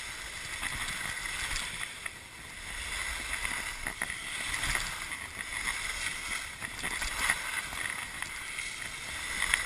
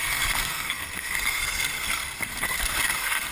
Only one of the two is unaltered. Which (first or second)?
first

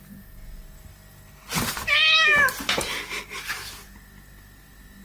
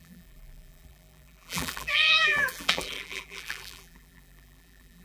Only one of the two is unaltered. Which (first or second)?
first